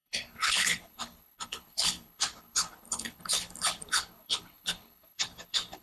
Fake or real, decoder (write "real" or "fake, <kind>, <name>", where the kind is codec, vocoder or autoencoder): fake, codec, HILCodec